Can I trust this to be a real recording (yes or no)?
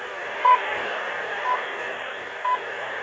no